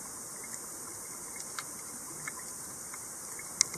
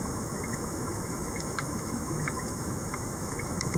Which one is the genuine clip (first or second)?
first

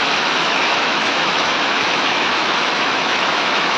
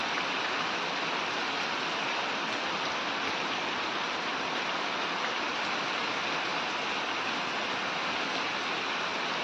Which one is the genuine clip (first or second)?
second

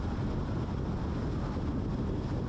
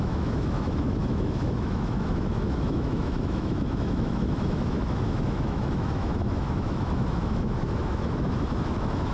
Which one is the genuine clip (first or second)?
first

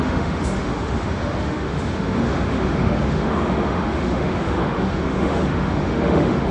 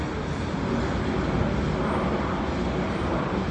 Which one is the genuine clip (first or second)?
second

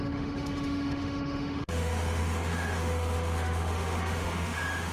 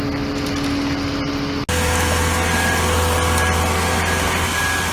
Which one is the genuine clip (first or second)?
second